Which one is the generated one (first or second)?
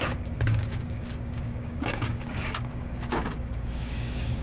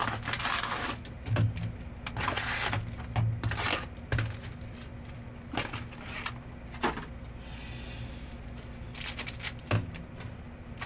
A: first